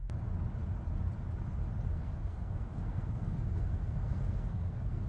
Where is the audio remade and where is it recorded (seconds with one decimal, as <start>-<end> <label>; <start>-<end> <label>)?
0.0-1.9 recorded; 1.9-5.1 remade